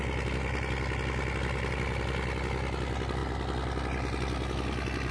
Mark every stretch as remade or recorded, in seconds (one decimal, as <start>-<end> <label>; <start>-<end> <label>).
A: 0.0-5.1 recorded